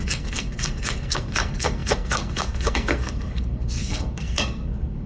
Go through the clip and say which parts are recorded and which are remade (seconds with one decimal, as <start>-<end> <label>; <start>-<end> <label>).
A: 0.0-5.1 remade